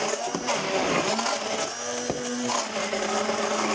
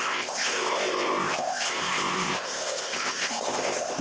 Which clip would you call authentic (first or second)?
first